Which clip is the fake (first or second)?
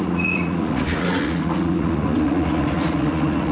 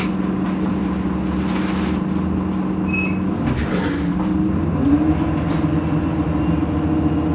first